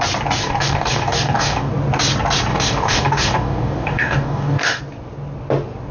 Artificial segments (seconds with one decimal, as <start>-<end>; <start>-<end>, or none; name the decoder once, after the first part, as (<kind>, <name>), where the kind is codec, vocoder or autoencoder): 0.4-1.7 (codec, DAC); 2.5-4.8